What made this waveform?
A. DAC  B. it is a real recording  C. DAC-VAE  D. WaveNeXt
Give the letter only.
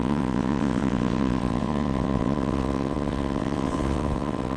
D